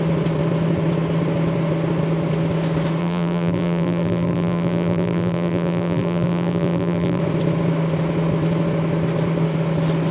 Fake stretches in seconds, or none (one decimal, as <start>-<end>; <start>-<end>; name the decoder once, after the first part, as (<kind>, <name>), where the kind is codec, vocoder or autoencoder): 3.0-7.2 (vocoder, BigVGAN v2)